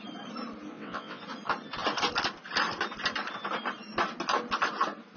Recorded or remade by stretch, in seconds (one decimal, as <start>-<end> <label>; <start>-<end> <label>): 0.0-0.7 recorded; 0.7-1.2 remade; 1.2-5.2 recorded